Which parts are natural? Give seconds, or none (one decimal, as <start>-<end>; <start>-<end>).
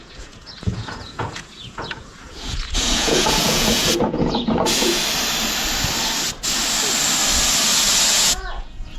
5.0-8.1